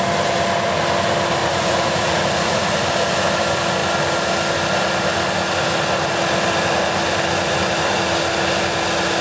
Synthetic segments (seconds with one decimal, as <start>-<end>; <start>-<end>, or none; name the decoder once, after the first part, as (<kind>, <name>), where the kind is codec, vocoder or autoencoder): 1.4-2.7 (vocoder, Vocos)